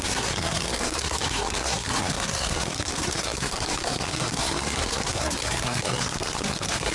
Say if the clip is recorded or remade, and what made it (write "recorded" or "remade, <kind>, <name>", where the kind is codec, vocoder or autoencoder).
remade, codec, SNAC